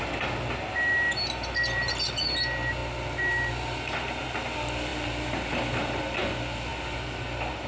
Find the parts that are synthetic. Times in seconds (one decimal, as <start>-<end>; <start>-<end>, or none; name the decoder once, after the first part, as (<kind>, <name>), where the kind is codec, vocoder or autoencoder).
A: none